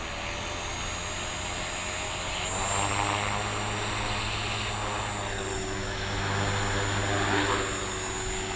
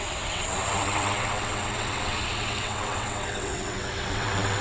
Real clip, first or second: first